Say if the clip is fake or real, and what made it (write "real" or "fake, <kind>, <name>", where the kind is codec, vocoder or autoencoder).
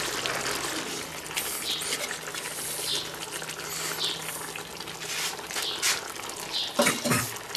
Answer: real